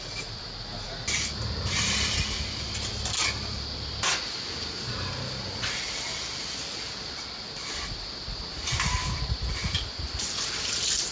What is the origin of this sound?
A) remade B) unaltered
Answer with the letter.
B